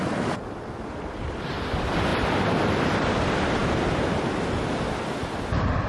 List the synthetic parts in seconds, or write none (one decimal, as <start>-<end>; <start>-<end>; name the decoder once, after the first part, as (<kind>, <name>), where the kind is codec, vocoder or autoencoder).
0.0-2.1 (vocoder, BigVGAN v2); 3.2-5.9